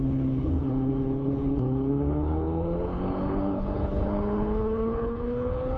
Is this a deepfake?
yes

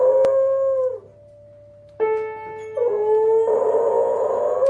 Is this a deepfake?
no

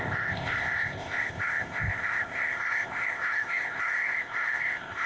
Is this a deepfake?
yes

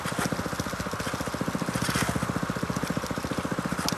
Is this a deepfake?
no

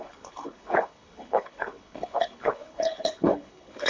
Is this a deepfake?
yes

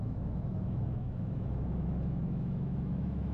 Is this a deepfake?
yes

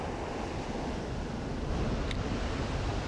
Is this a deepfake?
no